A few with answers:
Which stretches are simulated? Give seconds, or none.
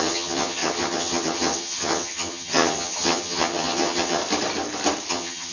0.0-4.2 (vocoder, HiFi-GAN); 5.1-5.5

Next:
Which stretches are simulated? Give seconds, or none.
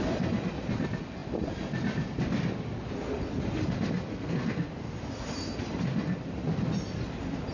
4.1-4.7 (codec, SNAC)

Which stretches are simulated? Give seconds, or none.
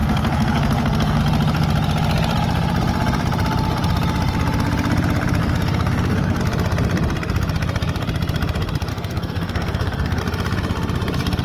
0.0-1.2 (codec, SNAC); 5.4-6.4; 8.9-10.2